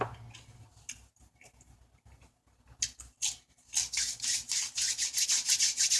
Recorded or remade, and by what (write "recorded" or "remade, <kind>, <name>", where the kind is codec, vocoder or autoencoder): recorded